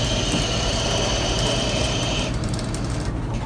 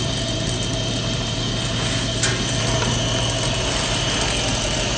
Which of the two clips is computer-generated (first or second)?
first